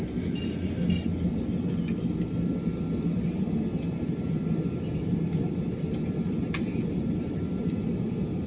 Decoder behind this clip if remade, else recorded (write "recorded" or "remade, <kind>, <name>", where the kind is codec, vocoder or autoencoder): recorded